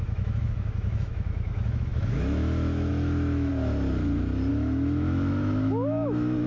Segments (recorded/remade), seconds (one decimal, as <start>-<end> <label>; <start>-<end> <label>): 0.0-3.5 remade; 3.5-4.5 recorded; 4.5-6.5 remade